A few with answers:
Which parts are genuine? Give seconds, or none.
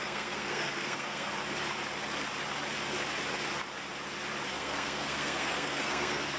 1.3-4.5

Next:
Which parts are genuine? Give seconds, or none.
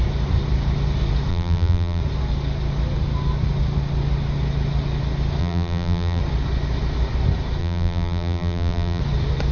0.0-1.3; 2.0-5.4; 6.2-7.6; 9.0-9.5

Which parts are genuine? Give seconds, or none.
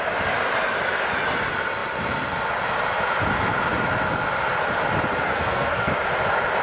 0.0-5.2; 5.9-6.6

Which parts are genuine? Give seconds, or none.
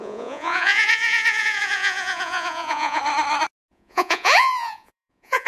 3.0-3.7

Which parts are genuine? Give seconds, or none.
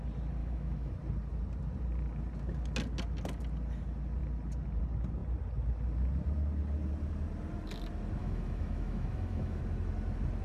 0.0-0.4; 0.9-8.2; 9.6-10.4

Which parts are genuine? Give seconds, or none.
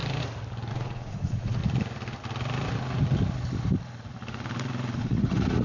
0.0-0.7; 1.6-5.0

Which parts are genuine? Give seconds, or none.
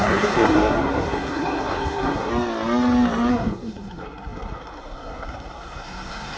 2.3-3.3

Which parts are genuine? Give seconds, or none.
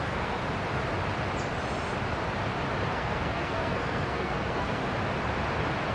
0.4-2.9; 4.8-5.9